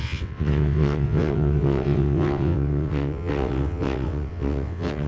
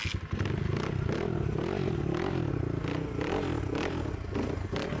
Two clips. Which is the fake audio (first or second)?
first